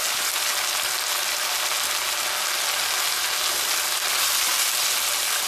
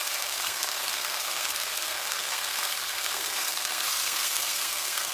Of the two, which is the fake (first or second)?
second